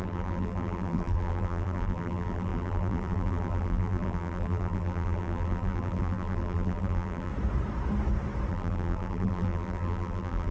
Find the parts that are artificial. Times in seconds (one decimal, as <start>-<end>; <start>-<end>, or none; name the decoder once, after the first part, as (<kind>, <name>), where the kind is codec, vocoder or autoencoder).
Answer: 0.0-7.3 (vocoder, BigVGAN v2); 8.5-10.5